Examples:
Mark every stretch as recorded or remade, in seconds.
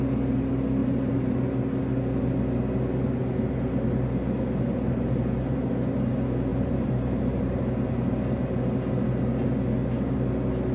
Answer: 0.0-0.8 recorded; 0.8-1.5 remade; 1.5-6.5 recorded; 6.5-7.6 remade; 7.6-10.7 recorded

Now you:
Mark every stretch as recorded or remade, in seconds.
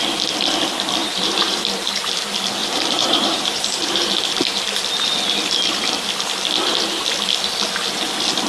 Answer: 0.0-1.0 recorded; 1.0-1.6 remade; 1.6-2.6 recorded; 2.6-4.1 remade; 4.1-8.5 recorded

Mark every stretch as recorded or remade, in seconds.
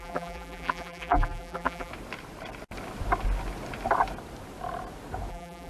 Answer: 0.0-1.9 remade; 1.9-5.3 recorded; 5.3-5.7 remade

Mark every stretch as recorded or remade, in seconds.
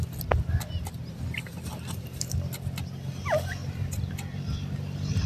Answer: 0.0-1.7 recorded; 1.7-2.3 remade; 2.3-3.6 recorded; 3.6-4.1 remade; 4.1-5.3 recorded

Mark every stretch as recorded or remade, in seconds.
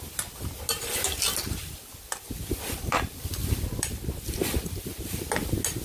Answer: 0.0-1.6 recorded; 1.6-5.1 remade; 5.1-5.8 recorded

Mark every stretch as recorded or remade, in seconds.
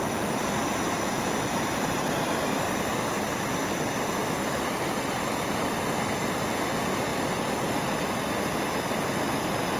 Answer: 0.0-0.7 recorded; 0.7-2.2 remade; 2.2-4.2 recorded; 4.2-5.4 remade; 5.4-9.8 recorded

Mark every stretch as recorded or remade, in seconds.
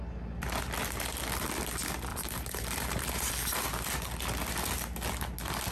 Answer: 0.0-2.1 recorded; 2.1-3.3 remade; 3.3-5.7 recorded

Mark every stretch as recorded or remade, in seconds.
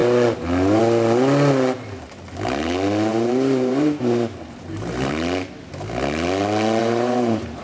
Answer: 0.0-3.1 recorded; 3.1-5.1 remade; 5.1-6.8 recorded; 6.8-7.6 remade